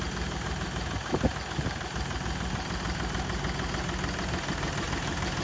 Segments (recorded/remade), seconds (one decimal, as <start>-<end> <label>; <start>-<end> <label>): 0.0-1.3 remade; 1.3-4.5 recorded; 4.5-5.4 remade